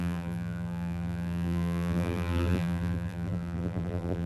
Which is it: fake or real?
fake